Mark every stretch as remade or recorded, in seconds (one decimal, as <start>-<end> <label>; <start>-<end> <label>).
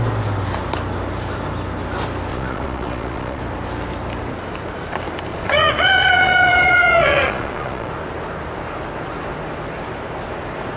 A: 0.0-2.3 recorded; 2.3-3.4 remade; 3.4-5.3 recorded; 5.3-7.9 remade; 7.9-10.8 recorded